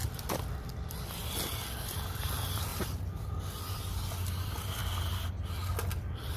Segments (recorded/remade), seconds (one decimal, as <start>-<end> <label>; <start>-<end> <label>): 0.0-4.8 remade; 4.8-6.0 recorded; 6.0-6.4 remade